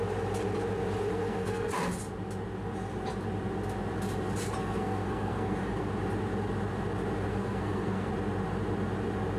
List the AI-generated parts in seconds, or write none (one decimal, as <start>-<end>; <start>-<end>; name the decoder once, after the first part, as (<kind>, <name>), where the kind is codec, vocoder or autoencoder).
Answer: 1.1-1.7 (codec, SNAC); 4.6-5.9; 7.3-8.1